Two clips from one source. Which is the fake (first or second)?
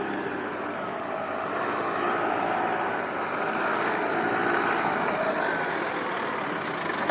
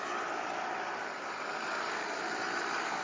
second